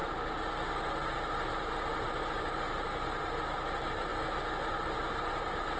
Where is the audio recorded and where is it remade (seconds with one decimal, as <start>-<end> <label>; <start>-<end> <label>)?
0.0-2.4 recorded; 2.4-4.1 remade; 4.1-5.3 recorded; 5.3-5.8 remade